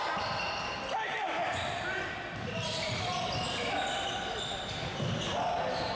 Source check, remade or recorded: recorded